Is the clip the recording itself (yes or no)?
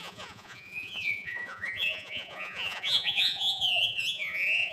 no